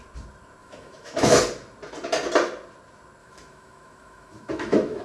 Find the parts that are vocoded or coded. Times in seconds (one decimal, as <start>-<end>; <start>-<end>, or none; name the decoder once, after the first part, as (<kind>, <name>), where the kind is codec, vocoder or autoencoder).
0.6-1.4 (autoencoder, DAC-VAE); 3.2-5.0